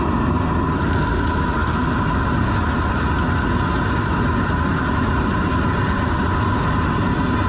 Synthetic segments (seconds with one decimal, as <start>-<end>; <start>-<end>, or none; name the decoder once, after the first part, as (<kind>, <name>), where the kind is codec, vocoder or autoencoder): none